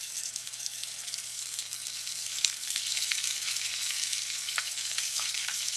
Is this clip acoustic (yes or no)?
no